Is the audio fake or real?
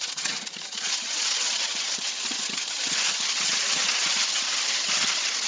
fake